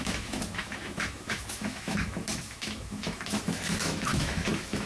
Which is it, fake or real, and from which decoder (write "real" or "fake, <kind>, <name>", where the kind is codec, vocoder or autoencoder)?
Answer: fake, autoencoder, DAC-VAE